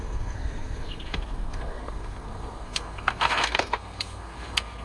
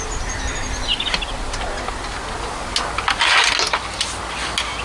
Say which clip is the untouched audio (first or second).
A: second